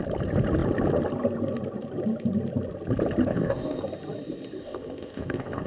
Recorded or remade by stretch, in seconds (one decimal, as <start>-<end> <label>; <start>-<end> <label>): 0.0-3.3 recorded; 3.3-3.8 remade; 3.8-4.6 recorded; 4.6-5.7 remade